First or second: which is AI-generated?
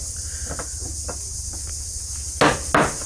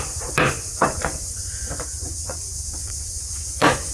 second